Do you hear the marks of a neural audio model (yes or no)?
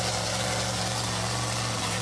no